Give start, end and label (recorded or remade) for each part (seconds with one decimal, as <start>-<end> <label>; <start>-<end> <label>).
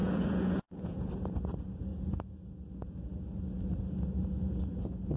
0.0-1.1 remade; 1.1-1.9 recorded; 1.9-4.6 remade; 4.6-5.2 recorded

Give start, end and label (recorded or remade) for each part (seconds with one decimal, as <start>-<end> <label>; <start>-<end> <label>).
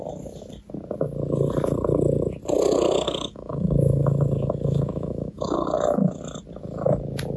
0.0-3.3 recorded; 3.3-6.2 remade; 6.2-7.4 recorded